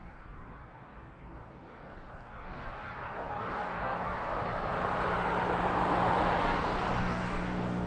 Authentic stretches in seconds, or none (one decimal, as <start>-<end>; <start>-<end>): 4.4-6.4